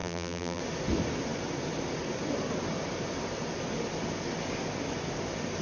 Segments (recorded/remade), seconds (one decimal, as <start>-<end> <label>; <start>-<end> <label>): 0.0-0.6 remade; 0.6-5.6 recorded